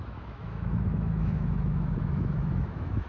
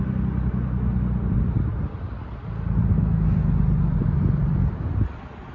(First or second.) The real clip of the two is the second